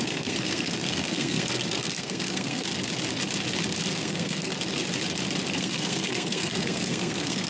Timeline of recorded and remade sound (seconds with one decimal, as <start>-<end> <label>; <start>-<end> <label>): 0.0-2.7 remade; 2.7-3.9 recorded; 3.9-4.5 remade; 4.5-5.5 recorded; 5.5-7.5 remade